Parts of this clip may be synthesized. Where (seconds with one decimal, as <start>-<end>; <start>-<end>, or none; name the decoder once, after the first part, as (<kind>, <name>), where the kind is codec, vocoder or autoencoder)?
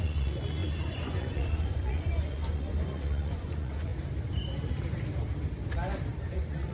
0.0-3.9 (vocoder, Vocos); 6.2-6.7